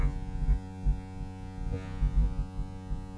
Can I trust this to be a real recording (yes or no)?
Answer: no